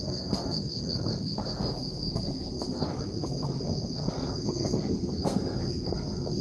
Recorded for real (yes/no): no